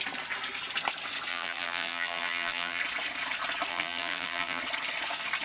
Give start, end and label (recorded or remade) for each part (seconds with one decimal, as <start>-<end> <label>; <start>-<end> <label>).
0.0-1.3 recorded; 1.3-2.8 remade; 2.8-3.7 recorded; 3.7-4.6 remade; 4.6-5.4 recorded